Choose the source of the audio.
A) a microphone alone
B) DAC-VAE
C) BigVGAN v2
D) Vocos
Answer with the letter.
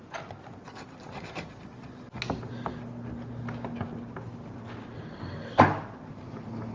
A